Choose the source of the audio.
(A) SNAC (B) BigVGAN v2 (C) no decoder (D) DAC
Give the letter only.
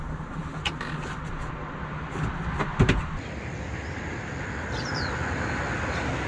C